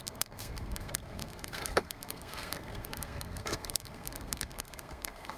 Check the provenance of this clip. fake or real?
fake